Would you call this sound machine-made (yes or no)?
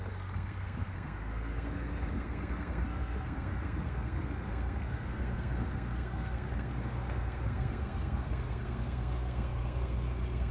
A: yes